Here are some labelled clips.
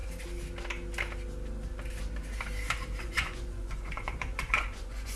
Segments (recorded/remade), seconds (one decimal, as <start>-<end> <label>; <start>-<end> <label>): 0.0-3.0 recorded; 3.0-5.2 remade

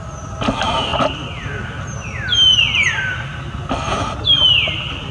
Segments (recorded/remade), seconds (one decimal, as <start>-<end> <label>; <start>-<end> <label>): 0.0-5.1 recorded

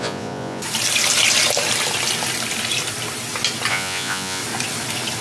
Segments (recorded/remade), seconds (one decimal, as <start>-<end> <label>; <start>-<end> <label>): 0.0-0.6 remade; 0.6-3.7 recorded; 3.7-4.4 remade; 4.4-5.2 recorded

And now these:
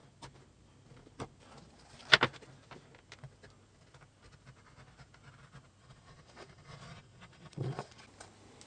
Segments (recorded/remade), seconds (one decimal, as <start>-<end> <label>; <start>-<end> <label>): 0.0-5.8 recorded; 5.8-8.0 remade; 8.0-8.7 recorded

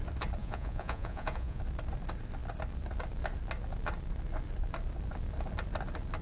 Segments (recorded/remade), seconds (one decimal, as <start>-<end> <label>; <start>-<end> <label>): 0.0-0.4 recorded; 0.4-1.6 remade; 1.6-6.2 recorded

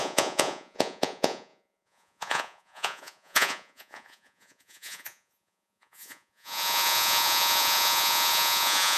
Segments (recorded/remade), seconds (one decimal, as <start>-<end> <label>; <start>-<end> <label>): 0.0-9.0 remade

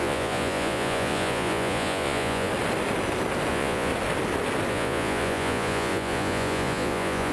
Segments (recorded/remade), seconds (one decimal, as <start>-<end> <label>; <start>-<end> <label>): 0.0-2.5 remade; 2.5-3.5 recorded; 3.5-3.9 remade; 3.9-4.7 recorded; 4.7-7.3 remade

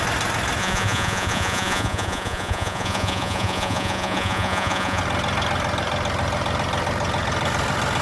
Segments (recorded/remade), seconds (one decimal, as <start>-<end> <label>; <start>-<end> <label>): 0.0-0.6 recorded; 0.6-5.0 remade; 5.0-8.0 recorded